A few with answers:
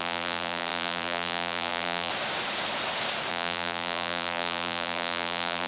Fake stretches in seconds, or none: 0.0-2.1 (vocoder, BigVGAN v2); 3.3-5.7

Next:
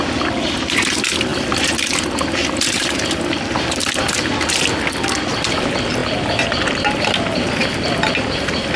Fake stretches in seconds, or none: none

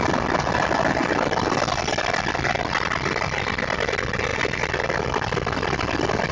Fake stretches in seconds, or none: none